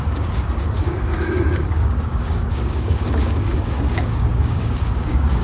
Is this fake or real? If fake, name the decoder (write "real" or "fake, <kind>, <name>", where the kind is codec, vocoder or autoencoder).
fake, codec, DAC